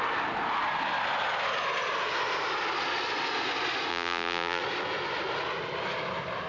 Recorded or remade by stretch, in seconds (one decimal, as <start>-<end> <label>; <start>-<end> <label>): 0.0-3.9 recorded; 3.9-4.6 remade; 4.6-6.5 recorded